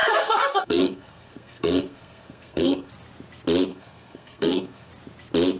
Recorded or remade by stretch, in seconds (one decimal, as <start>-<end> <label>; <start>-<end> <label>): 0.0-2.9 remade; 2.9-3.7 recorded; 3.7-4.9 remade; 4.9-5.6 recorded